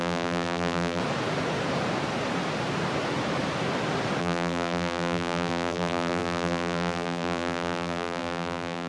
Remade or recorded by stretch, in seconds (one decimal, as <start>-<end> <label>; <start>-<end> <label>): 0.0-1.0 remade; 1.0-4.2 recorded; 4.2-8.9 remade